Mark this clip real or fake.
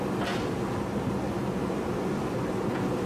real